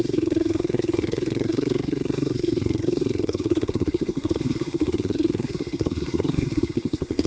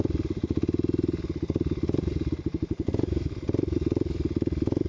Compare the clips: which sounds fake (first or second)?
first